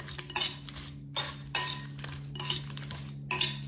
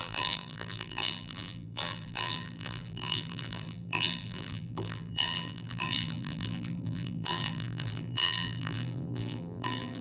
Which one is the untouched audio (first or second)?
first